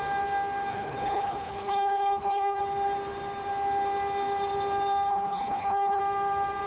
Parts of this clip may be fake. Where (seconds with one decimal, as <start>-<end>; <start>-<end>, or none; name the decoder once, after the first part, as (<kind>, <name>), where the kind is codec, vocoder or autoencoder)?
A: 0.7-2.6 (codec, HILCodec); 5.1-6.0